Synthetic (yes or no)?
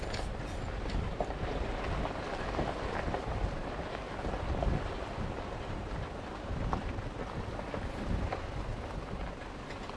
no